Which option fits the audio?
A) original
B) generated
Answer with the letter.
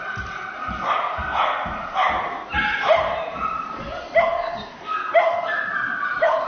A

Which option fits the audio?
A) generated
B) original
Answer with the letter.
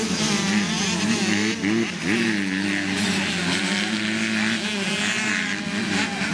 B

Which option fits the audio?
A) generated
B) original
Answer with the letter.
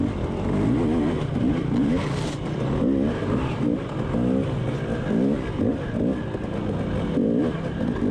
B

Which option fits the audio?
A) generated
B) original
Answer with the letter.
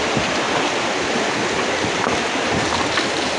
B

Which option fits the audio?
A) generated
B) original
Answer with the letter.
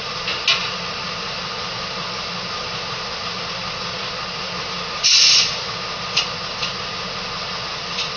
B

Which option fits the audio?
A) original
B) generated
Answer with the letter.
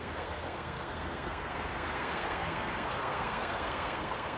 B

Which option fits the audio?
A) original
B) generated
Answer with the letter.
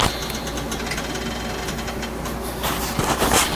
A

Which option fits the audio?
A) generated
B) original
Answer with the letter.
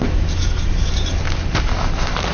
B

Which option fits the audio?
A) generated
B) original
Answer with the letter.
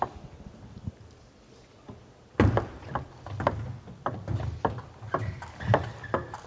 B